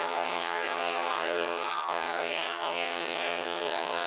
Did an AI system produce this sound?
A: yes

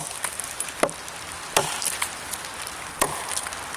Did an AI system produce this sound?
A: no